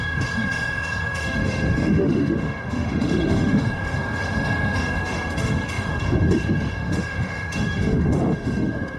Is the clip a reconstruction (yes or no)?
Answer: yes